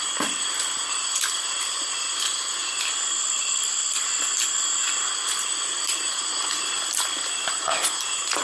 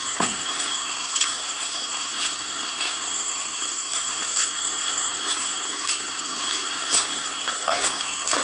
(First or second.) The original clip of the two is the first